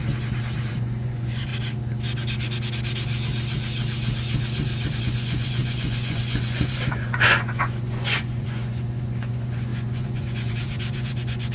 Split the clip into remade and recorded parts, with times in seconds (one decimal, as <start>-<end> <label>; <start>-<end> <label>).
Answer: 0.0-0.7 recorded; 0.7-1.5 remade; 1.5-5.0 recorded; 5.0-11.5 remade